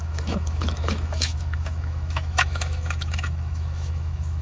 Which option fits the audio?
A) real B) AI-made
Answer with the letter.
B